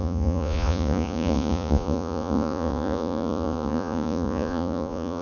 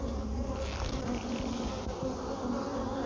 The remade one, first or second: first